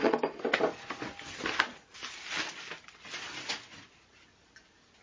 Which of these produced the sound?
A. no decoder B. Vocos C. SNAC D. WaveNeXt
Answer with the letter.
A